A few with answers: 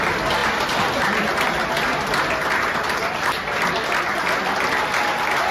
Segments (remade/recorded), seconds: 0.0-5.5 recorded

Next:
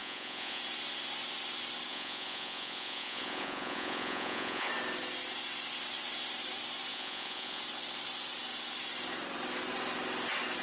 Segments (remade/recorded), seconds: 0.0-0.6 remade; 0.6-1.9 recorded; 1.9-4.7 remade; 4.7-6.9 recorded; 6.9-7.6 remade; 7.6-10.6 recorded

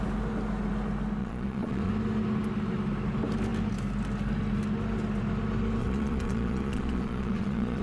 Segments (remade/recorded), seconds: 0.0-1.2 recorded; 1.2-1.9 remade; 1.9-5.8 recorded; 5.8-7.8 remade

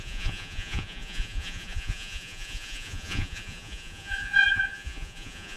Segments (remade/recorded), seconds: 0.0-5.6 remade